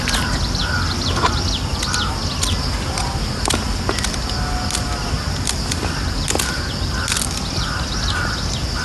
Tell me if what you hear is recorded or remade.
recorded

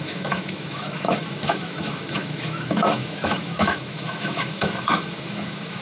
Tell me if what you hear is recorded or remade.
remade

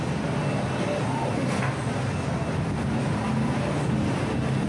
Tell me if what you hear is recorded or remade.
recorded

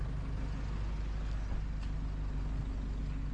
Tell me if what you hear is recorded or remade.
recorded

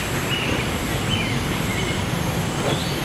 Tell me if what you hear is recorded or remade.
recorded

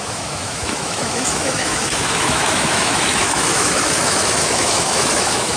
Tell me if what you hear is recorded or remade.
remade